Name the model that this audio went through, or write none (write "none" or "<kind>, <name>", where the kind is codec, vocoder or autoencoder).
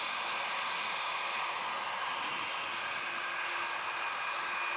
none